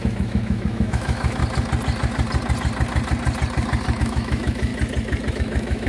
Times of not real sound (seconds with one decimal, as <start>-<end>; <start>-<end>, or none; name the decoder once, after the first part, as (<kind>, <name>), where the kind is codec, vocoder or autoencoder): 0.0-1.4 (autoencoder, DAC-VAE); 4.0-4.7; 5.3-5.9